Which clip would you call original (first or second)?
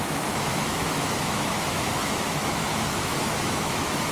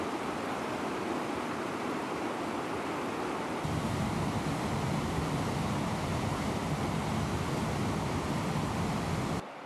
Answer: second